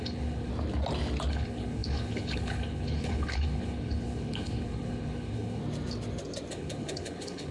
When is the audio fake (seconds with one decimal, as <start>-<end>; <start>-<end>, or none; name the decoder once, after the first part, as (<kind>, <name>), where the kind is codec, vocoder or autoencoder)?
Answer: 0.0-0.5 (codec, HILCodec); 1.3-5.6; 6.5-7.5